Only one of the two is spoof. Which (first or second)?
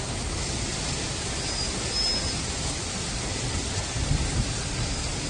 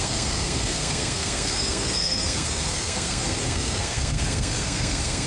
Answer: second